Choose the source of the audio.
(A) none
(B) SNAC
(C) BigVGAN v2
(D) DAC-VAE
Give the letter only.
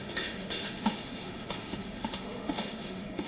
D